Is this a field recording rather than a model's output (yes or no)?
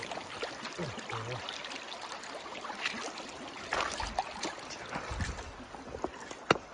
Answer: yes